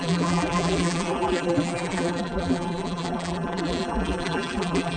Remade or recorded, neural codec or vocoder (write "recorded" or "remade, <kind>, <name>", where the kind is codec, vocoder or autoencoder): remade, vocoder, BigVGAN v2